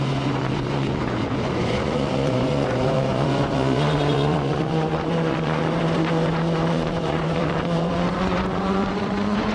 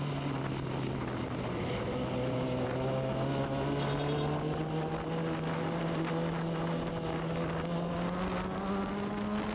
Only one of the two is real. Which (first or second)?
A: second